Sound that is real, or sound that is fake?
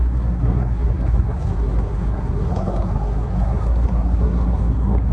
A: fake